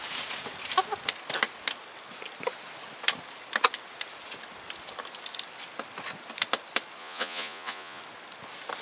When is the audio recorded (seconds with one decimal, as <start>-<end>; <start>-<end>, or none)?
0.0-7.0; 8.0-8.8